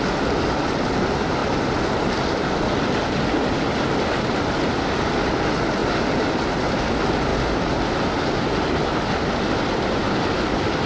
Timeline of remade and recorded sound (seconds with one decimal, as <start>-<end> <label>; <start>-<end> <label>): 0.0-10.9 recorded